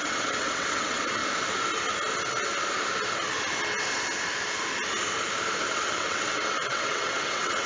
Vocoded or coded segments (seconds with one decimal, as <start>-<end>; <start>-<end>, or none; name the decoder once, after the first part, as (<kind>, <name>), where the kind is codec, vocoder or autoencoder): 0.0-1.2 (vocoder, WaveNeXt); 5.6-7.7

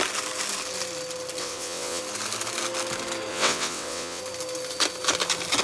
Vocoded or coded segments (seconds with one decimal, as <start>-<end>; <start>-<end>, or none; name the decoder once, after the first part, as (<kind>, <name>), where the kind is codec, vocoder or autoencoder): 1.4-2.0 (vocoder, WaveNeXt); 3.3-4.2

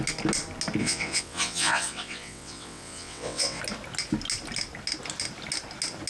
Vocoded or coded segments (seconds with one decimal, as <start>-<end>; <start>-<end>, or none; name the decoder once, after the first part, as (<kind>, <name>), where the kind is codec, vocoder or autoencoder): 0.8-3.6 (vocoder, WaveNeXt)

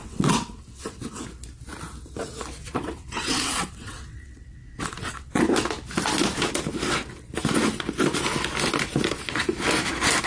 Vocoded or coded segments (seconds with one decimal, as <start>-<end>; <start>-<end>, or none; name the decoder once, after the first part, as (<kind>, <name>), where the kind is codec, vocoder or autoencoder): 0.0-1.2 (vocoder, WaveNeXt); 2.6-5.4

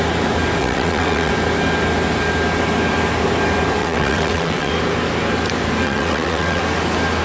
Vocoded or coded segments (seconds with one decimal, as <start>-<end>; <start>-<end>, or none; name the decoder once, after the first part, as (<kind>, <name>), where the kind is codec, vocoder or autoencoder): 0.6-1.3 (vocoder, WaveNeXt); 3.8-4.7; 5.8-6.6

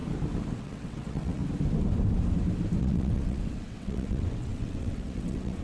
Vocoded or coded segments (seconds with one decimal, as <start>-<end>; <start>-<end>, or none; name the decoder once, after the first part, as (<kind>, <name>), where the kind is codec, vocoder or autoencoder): 0.6-1.4 (vocoder, WaveNeXt); 2.8-5.6

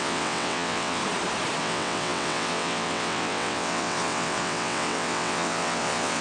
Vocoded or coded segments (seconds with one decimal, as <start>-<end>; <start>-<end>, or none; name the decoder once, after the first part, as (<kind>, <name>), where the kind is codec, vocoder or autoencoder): 0.0-1.0 (vocoder, WaveNeXt); 1.6-6.2